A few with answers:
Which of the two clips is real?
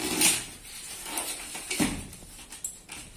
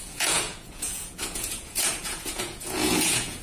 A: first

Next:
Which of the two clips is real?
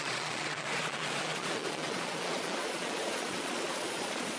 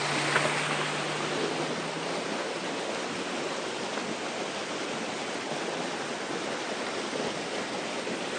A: second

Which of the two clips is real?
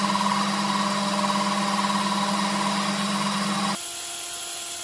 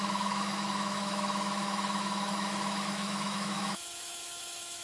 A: first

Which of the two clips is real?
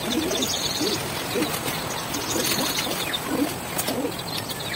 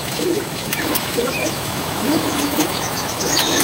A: first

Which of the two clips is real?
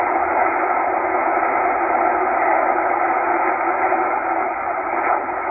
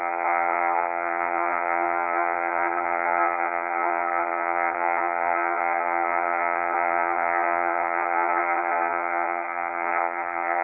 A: first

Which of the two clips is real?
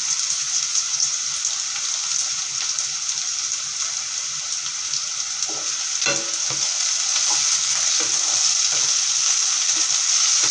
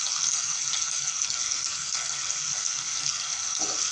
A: first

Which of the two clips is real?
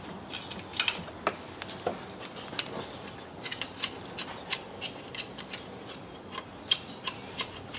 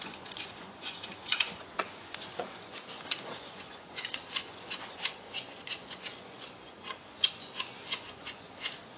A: first